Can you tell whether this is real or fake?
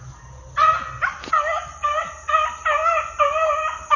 real